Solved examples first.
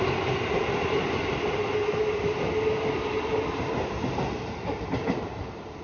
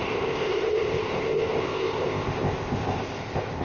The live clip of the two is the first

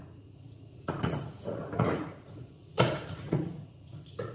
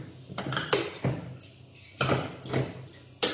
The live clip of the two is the second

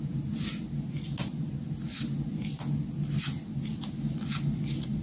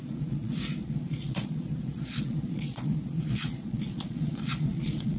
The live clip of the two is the first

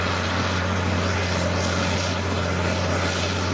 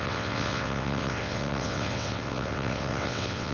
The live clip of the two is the first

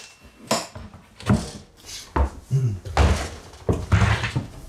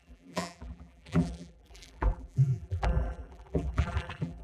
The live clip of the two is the first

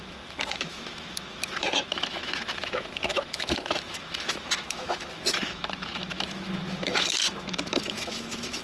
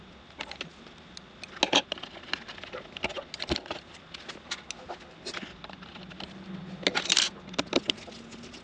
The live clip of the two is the second